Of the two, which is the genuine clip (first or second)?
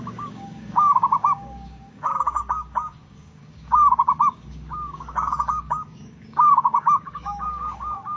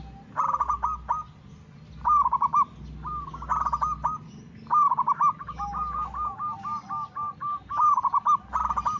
second